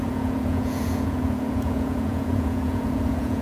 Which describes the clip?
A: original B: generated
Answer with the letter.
B